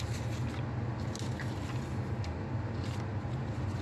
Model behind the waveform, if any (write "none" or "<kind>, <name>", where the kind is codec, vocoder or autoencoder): none